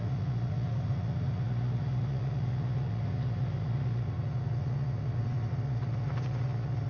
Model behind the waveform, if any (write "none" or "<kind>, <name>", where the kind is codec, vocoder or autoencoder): vocoder, Vocos